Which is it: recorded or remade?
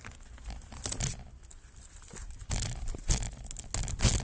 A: recorded